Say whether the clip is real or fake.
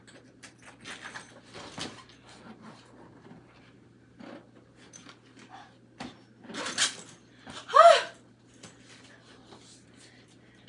real